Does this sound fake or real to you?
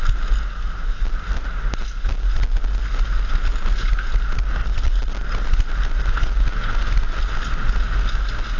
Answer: real